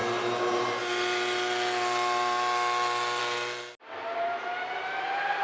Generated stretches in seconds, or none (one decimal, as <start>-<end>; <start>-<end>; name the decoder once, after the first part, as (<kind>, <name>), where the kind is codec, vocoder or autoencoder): none